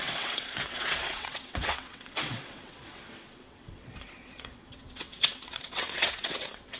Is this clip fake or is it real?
fake